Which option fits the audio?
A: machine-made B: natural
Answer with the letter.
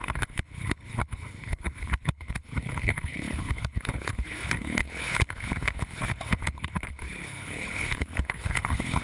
A